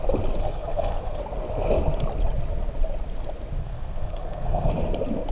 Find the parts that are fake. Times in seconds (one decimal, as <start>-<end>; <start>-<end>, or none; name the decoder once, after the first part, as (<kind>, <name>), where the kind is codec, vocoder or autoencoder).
0.4-1.2 (codec, SNAC); 3.6-4.7